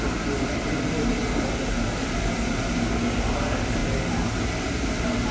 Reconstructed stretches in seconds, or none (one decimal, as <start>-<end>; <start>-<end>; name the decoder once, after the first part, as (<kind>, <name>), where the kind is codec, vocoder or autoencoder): none